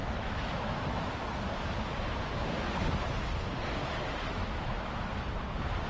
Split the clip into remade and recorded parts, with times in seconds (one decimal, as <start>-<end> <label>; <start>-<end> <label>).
0.0-1.1 remade; 1.1-3.8 recorded; 3.8-4.6 remade; 4.6-5.9 recorded